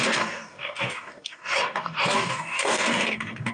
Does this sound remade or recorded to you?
remade